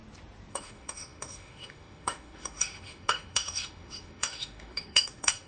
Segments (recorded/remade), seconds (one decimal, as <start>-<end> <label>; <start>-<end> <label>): 0.0-0.5 recorded; 0.5-5.5 remade